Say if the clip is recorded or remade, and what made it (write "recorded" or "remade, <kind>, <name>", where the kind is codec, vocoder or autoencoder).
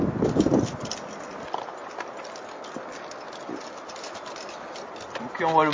recorded